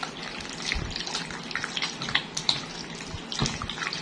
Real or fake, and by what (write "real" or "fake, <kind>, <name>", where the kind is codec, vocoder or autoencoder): real